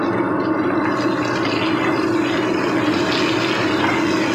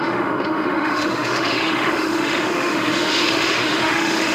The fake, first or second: second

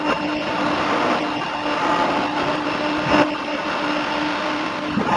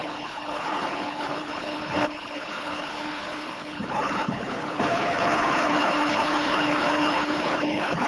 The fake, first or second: second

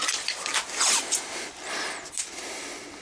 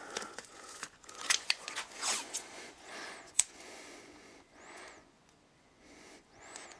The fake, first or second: second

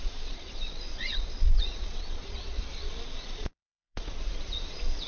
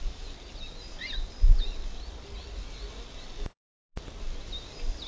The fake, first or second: first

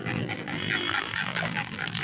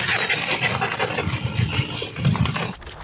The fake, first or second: first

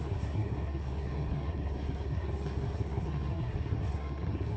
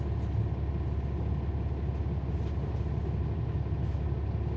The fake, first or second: first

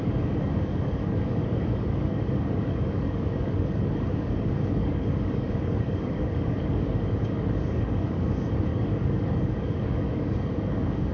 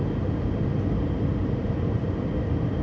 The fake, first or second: first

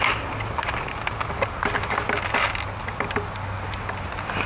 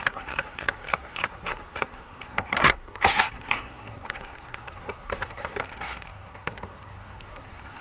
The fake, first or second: second